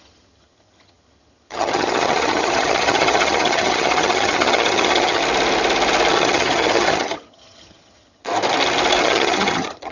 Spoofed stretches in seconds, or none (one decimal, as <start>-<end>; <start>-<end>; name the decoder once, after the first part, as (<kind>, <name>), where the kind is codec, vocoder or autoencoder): 0.0-5.2 (vocoder, HiFi-GAN); 6.1-8.3; 9.0-9.9